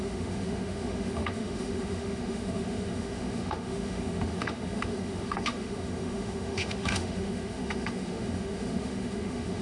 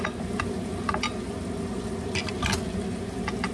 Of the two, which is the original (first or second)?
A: second